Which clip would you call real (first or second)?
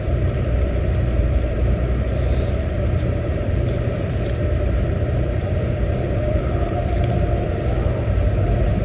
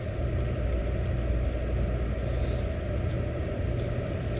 second